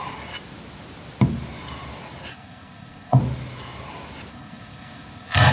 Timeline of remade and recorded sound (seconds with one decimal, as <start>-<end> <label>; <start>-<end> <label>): 0.0-2.3 recorded; 2.3-3.2 remade; 3.2-4.3 recorded; 4.3-5.5 remade